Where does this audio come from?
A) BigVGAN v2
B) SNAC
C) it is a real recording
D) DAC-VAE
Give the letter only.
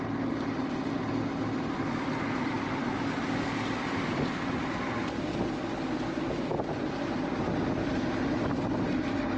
C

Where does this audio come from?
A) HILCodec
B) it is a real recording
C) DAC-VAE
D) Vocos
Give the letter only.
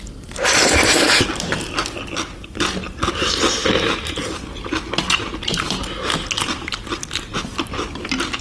B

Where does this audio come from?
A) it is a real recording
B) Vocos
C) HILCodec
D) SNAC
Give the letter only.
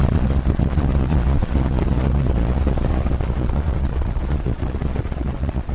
B